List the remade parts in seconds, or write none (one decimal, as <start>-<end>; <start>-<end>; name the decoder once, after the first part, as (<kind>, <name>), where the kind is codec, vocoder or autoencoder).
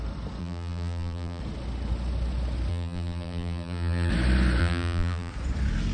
0.4-1.4 (vocoder, BigVGAN v2); 2.7-4.1; 4.6-5.3